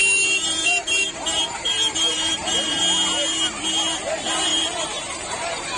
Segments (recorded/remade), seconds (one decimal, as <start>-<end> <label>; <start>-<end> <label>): 0.0-2.8 remade; 2.8-4.5 recorded; 4.5-5.8 remade